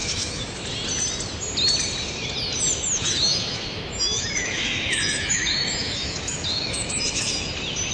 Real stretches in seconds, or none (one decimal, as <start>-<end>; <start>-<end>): 0.6-2.8; 7.5-7.9